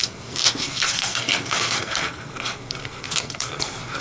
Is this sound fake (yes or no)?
yes